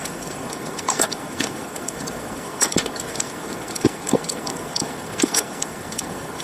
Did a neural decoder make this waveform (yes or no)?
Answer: yes